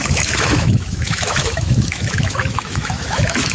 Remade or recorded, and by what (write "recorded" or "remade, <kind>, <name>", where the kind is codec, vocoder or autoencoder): remade, autoencoder, DAC-VAE